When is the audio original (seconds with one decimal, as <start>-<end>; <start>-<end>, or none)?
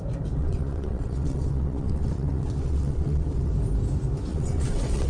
0.0-0.4; 3.5-4.3